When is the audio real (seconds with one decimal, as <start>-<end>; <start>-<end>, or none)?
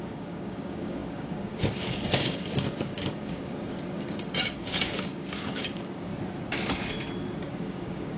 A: 6.1-7.4